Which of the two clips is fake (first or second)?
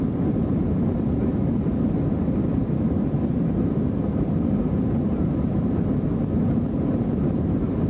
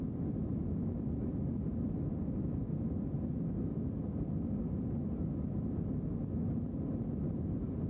first